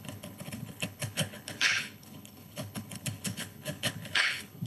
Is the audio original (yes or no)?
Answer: no